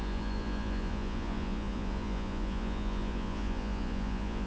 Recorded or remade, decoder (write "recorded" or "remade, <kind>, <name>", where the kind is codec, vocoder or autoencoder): remade, vocoder, Vocos